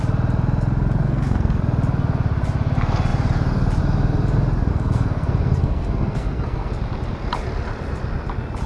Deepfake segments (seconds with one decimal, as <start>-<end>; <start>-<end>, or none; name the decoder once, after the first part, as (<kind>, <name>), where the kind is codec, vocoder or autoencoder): 1.0-1.6 (codec, SNAC); 4.7-6.7